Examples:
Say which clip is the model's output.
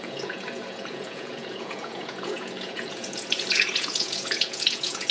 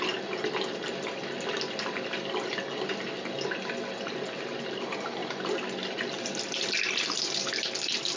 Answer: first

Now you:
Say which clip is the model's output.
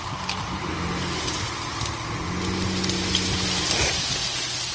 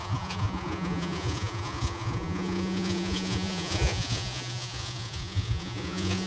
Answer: second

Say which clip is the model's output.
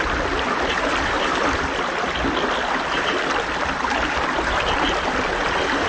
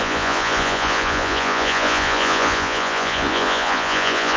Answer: second